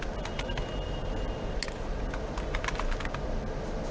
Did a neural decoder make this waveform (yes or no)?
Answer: no